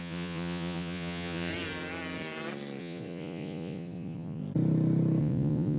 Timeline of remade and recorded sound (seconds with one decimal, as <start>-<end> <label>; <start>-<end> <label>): 0.0-1.5 remade; 1.5-2.8 recorded; 2.8-4.4 remade; 4.4-5.2 recorded; 5.2-5.8 remade